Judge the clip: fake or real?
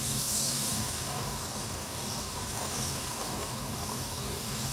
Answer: fake